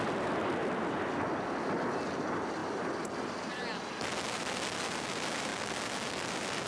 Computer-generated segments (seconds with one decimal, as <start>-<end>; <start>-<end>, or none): none